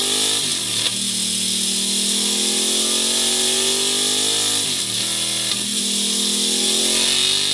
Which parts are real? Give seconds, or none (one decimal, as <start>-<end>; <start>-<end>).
0.0-7.5